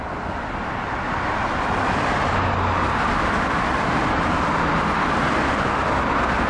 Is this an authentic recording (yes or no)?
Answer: yes